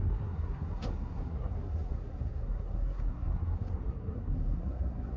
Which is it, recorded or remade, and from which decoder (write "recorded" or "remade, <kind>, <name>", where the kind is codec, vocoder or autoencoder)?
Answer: remade, codec, SNAC